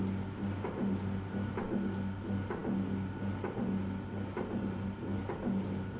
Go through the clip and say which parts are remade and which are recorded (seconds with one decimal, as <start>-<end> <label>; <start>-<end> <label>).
0.0-6.0 recorded